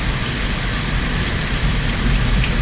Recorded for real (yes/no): yes